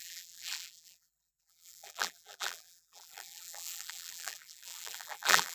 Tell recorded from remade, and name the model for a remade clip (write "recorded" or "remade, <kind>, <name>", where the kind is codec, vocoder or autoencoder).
remade, vocoder, BigVGAN v2